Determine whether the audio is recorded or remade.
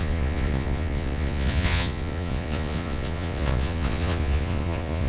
remade